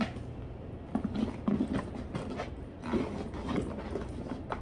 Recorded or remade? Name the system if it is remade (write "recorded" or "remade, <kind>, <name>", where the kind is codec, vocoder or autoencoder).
recorded